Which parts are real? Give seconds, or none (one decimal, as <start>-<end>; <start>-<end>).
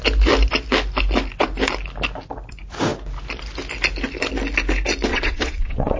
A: 0.0-5.1